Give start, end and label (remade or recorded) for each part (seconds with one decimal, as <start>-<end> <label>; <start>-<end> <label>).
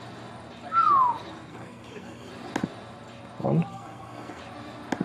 0.0-1.5 recorded; 1.5-2.3 remade; 2.3-3.7 recorded; 3.7-4.4 remade; 4.4-5.0 recorded